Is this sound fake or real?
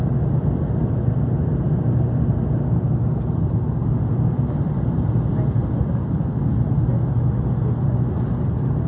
real